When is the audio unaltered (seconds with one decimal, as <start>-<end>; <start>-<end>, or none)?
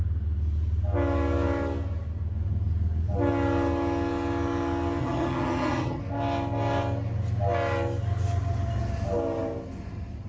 0.0-5.0; 6.0-10.3